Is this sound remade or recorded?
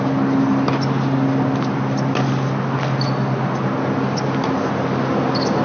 recorded